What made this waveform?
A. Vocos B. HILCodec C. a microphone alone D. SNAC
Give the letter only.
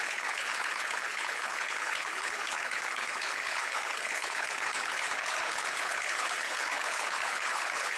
B